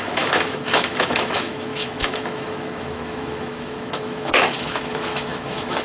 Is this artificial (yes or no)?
yes